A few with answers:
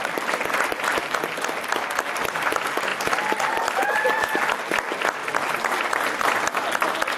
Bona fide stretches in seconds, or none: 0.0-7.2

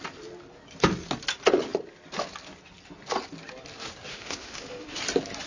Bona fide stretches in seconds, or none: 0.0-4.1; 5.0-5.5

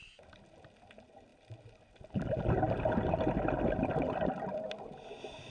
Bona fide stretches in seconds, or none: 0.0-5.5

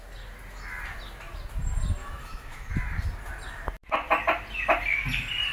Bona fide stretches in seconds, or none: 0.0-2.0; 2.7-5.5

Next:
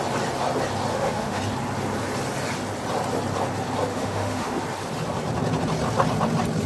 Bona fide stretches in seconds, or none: 0.0-0.9; 1.4-3.9; 4.6-6.7

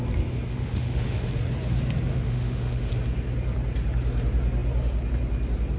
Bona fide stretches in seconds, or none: 0.0-0.5; 1.3-2.1; 2.9-5.8

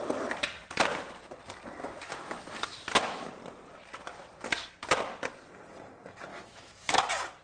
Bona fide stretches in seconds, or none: 0.0-1.8; 2.4-6.3; 7.0-7.4

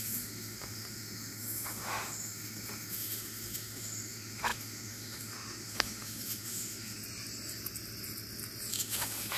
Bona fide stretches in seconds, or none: 7.0-8.7